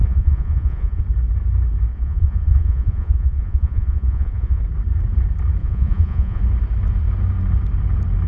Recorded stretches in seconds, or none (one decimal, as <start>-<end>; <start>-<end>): 1.0-1.9; 4.6-5.6; 6.4-8.3